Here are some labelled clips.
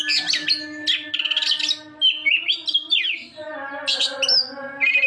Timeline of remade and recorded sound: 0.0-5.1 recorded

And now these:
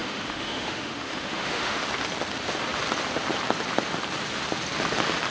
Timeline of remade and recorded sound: 0.0-1.8 remade; 1.8-5.3 recorded

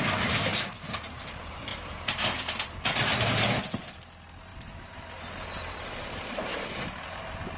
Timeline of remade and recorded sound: 0.0-0.5 recorded; 0.5-1.2 remade; 1.2-1.7 recorded; 1.7-3.6 remade; 3.6-4.5 recorded; 4.5-7.6 remade